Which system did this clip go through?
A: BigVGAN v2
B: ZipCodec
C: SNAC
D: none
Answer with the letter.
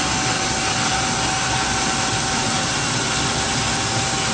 D